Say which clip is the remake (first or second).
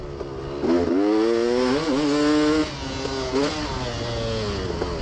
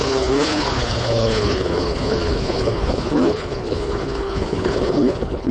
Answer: second